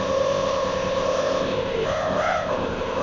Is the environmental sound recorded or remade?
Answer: remade